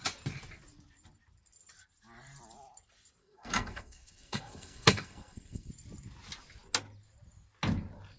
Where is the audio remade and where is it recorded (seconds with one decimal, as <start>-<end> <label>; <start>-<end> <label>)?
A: 0.0-3.2 recorded; 3.2-5.7 remade; 5.7-8.2 recorded

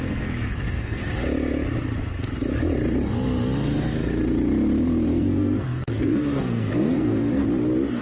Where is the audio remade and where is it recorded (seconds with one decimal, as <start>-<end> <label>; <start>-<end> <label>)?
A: 0.0-1.0 remade; 1.0-5.1 recorded; 5.1-7.4 remade; 7.4-8.0 recorded

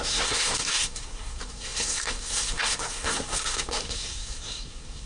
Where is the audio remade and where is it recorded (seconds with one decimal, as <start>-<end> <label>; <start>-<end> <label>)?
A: 0.0-5.1 remade

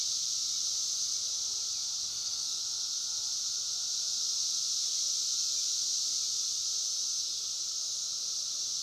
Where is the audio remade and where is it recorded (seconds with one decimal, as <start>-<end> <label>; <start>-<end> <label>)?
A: 0.0-2.1 recorded; 2.1-2.6 remade; 2.6-8.8 recorded

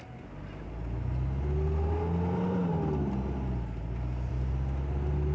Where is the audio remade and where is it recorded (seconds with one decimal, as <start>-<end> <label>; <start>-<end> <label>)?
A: 0.0-5.3 recorded

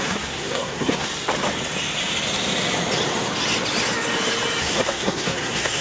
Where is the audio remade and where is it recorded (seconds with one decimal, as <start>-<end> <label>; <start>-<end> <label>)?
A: 0.0-1.1 remade; 1.1-4.6 recorded; 4.6-5.8 remade

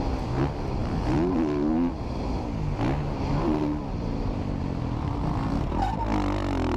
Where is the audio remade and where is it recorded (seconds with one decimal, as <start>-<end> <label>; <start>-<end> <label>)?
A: 0.0-6.8 recorded